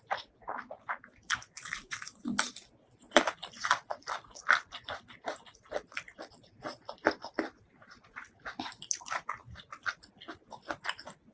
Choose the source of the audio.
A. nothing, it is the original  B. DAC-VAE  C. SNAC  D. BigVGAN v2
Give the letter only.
D